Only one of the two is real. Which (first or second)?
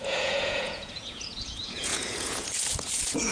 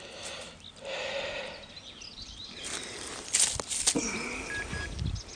second